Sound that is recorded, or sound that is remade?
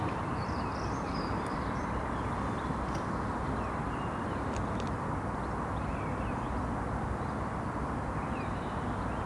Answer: recorded